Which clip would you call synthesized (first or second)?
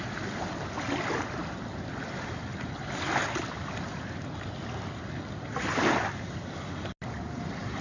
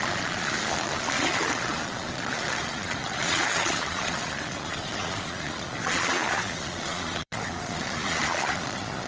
second